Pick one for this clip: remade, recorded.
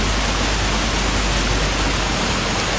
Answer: recorded